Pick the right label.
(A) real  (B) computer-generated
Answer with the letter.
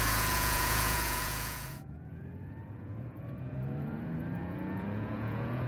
B